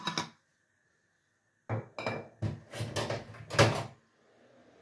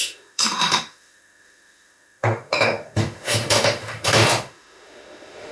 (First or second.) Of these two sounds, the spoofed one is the second